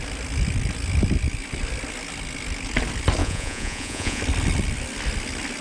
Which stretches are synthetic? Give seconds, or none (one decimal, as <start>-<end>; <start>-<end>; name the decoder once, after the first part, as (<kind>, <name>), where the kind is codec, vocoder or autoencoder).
3.2-4.2 (vocoder, Vocos)